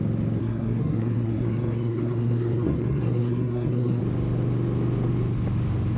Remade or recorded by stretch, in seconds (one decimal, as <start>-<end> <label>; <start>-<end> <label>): 0.0-0.4 recorded; 0.4-4.0 remade; 4.0-6.0 recorded